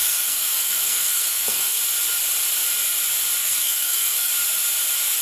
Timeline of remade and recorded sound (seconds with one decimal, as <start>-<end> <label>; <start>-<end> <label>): 0.0-1.8 remade; 1.8-3.4 recorded; 3.4-4.3 remade; 4.3-5.2 recorded